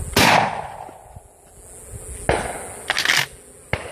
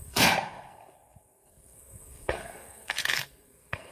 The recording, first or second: first